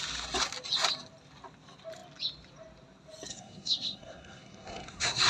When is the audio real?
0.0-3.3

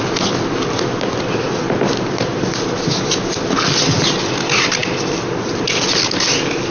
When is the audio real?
0.0-6.7

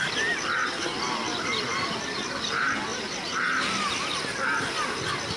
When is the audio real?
0.0-5.4

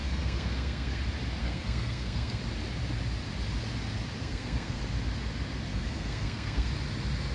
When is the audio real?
1.0-1.4; 2.4-4.2; 4.8-5.7; 6.7-7.3